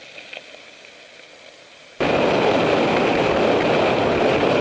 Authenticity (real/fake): real